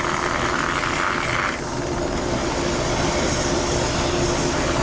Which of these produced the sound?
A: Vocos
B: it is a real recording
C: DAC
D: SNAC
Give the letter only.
B